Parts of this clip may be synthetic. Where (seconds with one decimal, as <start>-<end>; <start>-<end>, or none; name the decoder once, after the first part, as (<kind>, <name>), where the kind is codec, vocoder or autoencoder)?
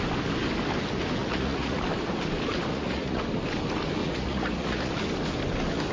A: 1.2-1.8 (vocoder, Vocos); 2.7-3.2; 4.0-4.9